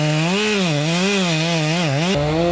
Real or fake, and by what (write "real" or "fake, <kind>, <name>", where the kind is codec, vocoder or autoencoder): real